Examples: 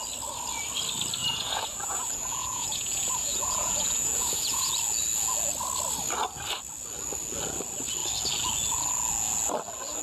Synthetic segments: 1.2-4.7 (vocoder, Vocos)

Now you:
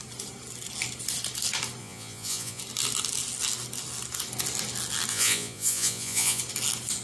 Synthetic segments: 1.8-2.6 (vocoder, Vocos); 5.1-6.4

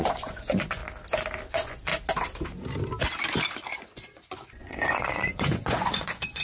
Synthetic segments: 0.0-0.8 (vocoder, Vocos); 1.5-1.9; 3.5-6.4

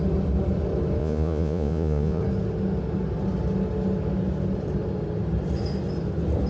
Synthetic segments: 1.0-2.2 (vocoder, Vocos)